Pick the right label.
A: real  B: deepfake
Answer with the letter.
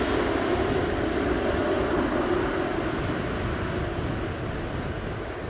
A